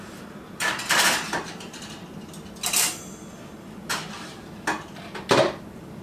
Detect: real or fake fake